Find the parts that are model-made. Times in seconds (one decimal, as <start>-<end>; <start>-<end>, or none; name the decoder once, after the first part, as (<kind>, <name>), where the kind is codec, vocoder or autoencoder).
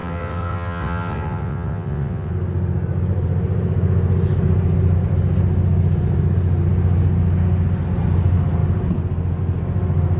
0.0-2.3 (vocoder, WaveNeXt)